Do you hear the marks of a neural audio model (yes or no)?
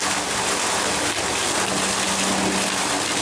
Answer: no